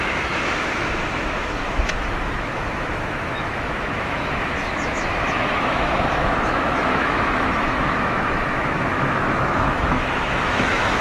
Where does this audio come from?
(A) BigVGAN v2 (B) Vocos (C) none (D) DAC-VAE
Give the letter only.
D